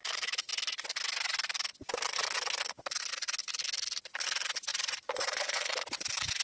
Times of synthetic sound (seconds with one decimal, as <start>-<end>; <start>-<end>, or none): 4.7-5.7